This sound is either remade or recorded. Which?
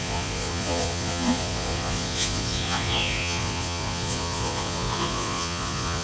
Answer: remade